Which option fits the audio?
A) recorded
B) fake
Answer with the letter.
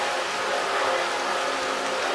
A